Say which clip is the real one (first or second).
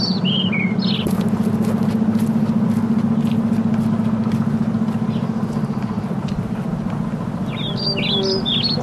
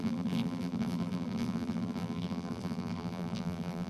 first